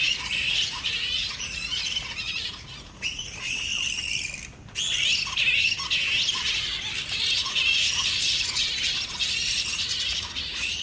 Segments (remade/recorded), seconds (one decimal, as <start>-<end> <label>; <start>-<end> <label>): 0.0-3.7 remade; 3.7-7.1 recorded; 7.1-8.6 remade; 8.6-9.1 recorded; 9.1-10.8 remade